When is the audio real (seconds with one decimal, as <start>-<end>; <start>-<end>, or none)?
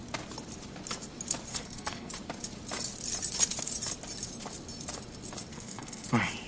0.0-1.5; 2.1-5.5; 6.1-6.5